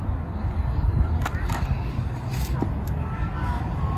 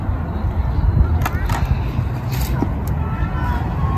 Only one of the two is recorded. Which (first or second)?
second